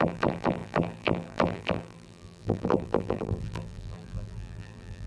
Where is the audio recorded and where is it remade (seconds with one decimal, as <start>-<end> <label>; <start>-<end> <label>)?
0.0-5.1 remade